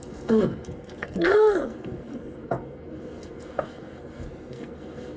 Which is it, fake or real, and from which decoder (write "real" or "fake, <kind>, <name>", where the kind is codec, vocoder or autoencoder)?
fake, codec, SNAC